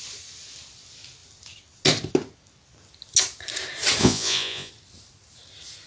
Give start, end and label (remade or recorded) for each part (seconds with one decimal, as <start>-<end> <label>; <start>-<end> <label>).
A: 0.0-4.0 recorded; 4.0-4.7 remade; 4.7-5.9 recorded